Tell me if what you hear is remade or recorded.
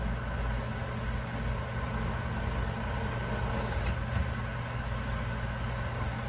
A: recorded